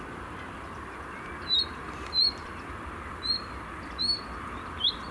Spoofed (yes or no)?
yes